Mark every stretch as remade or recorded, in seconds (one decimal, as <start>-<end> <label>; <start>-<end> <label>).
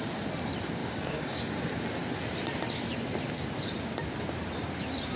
0.0-0.8 recorded; 0.8-1.4 remade; 1.4-5.2 recorded